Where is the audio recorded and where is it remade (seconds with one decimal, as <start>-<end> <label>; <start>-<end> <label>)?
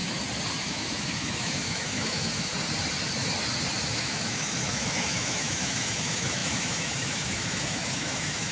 0.0-0.6 recorded; 0.6-2.5 remade; 2.5-3.9 recorded; 3.9-8.5 remade